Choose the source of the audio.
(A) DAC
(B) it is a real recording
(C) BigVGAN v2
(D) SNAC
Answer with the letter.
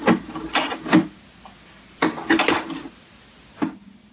B